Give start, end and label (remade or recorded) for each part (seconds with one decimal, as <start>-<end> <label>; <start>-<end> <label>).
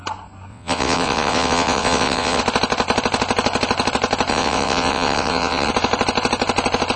0.0-0.5 recorded; 0.5-2.4 remade; 2.4-4.3 recorded; 4.3-5.7 remade; 5.7-7.0 recorded